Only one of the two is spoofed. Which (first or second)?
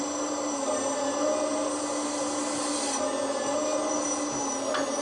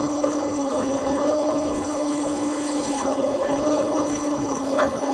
second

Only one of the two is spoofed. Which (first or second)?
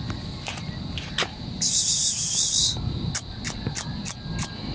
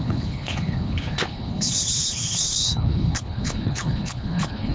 second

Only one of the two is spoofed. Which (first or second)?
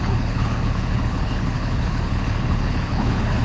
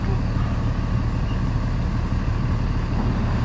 first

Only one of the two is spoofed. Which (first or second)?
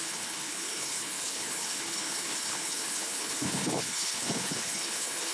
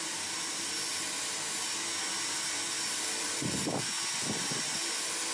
first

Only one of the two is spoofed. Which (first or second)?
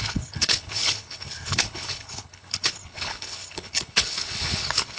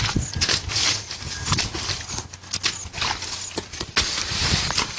first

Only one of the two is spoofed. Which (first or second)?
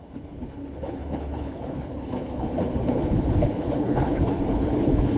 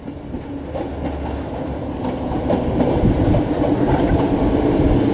first